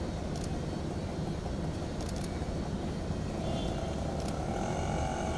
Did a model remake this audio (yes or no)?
no